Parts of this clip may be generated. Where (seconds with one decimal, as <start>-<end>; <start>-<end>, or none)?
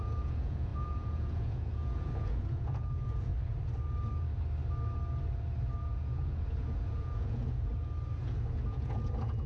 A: 0.0-3.3; 5.8-7.7; 8.2-9.5